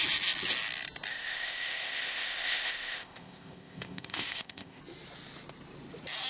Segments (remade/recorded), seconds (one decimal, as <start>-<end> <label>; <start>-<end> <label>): 0.0-1.1 recorded; 1.1-4.8 remade; 4.8-6.3 recorded